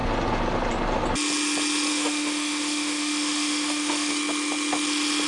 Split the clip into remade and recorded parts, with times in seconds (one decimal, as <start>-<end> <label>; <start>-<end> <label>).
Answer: 0.0-1.9 recorded; 1.9-4.1 remade; 4.1-5.3 recorded